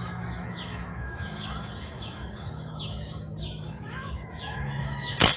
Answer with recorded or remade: remade